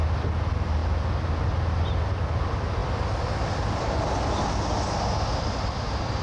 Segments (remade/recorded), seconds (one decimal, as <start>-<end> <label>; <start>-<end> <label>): 0.0-6.2 recorded